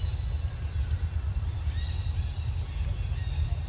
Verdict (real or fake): real